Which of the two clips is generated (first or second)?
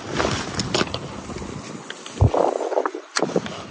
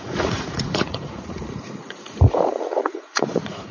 second